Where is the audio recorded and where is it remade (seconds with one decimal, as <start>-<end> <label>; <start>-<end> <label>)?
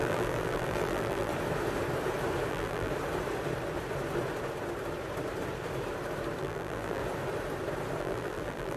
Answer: 0.0-1.3 remade; 1.3-2.5 recorded; 2.5-2.9 remade; 2.9-6.4 recorded; 6.4-7.0 remade; 7.0-8.0 recorded; 8.0-8.8 remade